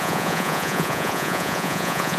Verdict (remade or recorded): remade